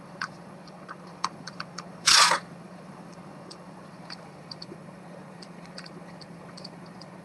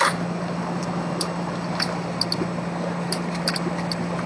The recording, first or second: second